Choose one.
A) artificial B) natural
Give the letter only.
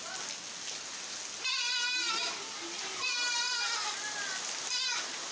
B